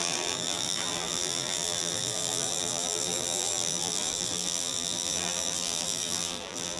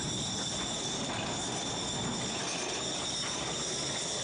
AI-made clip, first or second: first